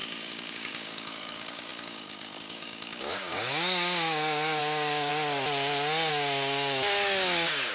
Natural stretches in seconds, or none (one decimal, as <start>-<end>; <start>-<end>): 5.1-6.1